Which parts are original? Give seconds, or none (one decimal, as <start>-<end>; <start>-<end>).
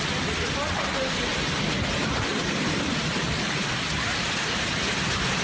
0.0-2.3